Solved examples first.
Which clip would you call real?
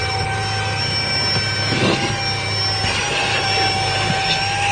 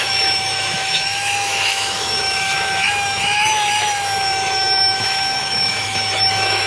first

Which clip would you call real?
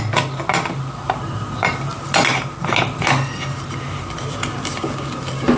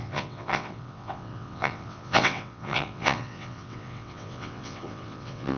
first